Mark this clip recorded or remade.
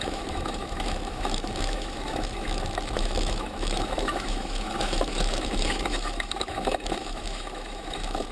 remade